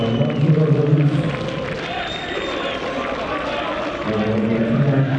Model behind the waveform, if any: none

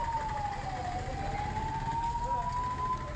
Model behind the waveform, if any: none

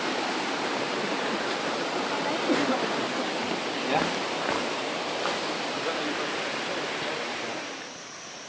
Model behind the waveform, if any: none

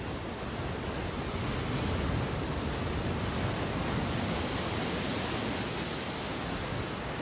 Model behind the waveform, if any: none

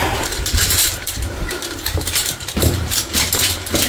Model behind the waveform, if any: vocoder, BigVGAN v2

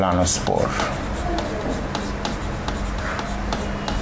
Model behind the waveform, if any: none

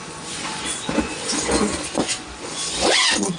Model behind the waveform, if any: vocoder, Vocos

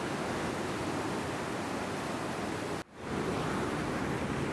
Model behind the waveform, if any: none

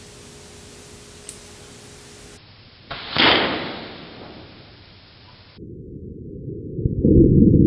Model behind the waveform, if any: none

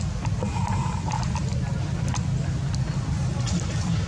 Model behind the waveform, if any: none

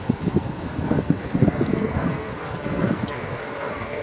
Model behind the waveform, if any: codec, SNAC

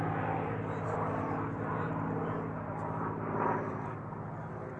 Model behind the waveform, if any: none